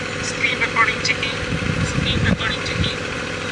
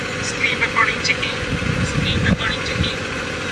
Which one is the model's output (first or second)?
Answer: second